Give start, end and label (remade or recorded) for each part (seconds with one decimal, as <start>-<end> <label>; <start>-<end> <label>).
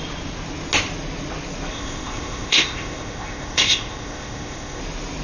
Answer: 0.0-1.7 recorded; 1.7-4.8 remade; 4.8-5.2 recorded